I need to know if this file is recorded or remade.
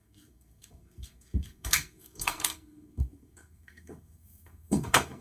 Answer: remade